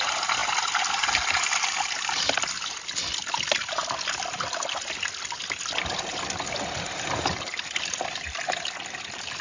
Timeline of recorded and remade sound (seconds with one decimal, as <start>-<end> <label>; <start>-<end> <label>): 0.0-9.4 recorded